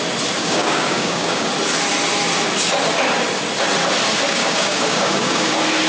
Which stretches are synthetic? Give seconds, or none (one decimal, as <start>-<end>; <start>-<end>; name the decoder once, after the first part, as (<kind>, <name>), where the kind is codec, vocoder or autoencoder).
0.4-1.5 (codec, DAC); 4.3-5.5